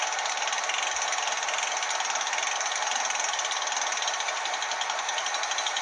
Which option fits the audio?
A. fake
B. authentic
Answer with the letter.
B